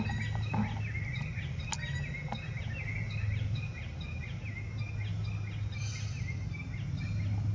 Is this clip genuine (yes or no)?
yes